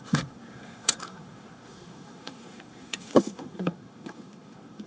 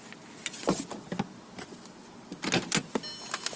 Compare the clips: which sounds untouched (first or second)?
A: second